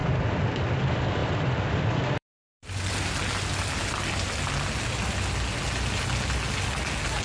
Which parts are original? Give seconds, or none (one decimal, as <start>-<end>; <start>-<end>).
0.0-1.2; 2.9-7.2